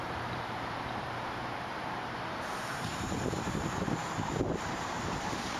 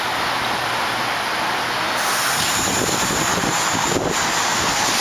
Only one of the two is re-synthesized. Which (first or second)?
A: first